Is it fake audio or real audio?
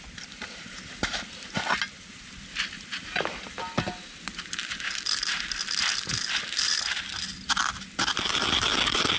real